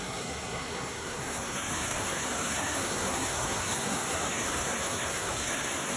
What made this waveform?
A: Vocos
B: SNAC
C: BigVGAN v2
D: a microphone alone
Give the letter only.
B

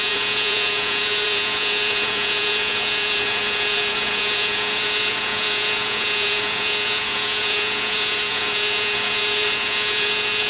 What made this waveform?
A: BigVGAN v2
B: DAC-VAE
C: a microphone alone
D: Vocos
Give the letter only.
D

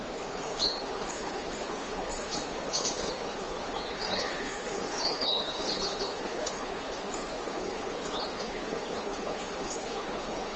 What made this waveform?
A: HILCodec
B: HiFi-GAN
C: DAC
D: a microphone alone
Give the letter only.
A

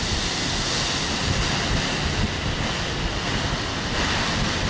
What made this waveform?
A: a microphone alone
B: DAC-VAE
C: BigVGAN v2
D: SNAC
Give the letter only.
A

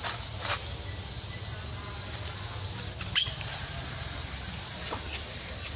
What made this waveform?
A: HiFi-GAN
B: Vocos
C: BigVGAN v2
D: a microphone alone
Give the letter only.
D